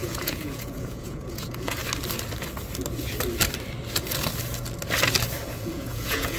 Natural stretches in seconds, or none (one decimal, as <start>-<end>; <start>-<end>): 1.8-5.6